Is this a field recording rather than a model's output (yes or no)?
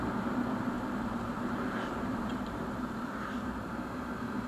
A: no